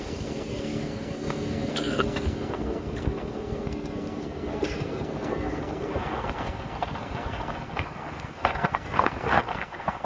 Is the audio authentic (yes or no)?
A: no